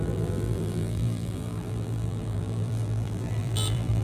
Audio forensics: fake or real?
fake